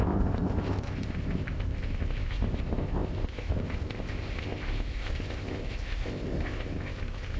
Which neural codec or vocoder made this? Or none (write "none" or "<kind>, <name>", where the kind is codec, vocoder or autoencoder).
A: codec, ZipCodec